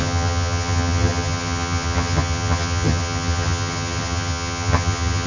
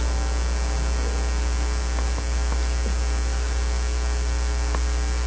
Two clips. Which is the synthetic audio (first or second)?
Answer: first